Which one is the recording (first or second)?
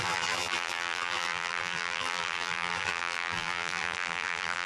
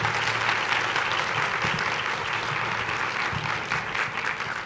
second